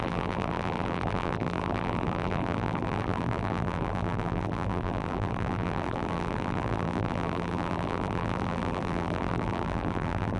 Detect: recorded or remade remade